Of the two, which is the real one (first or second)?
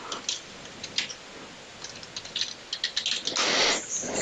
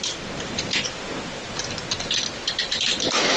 first